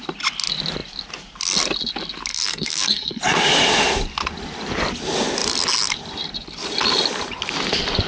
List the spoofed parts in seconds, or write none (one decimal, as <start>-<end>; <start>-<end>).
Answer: 2.3-3.2